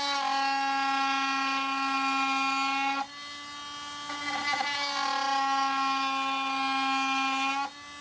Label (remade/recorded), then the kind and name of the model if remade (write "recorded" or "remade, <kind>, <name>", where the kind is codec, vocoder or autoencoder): recorded